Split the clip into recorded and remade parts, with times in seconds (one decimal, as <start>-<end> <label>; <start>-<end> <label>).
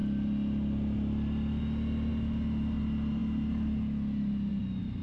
0.0-5.0 recorded